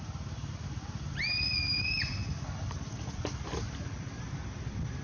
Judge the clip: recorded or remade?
remade